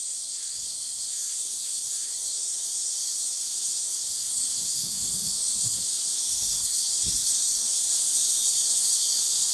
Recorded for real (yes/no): no